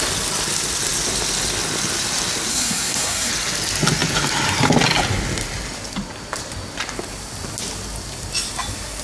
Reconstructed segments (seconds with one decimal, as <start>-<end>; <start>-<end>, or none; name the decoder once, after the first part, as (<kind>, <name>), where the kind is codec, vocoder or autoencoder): 2.5-3.3 (codec, SNAC)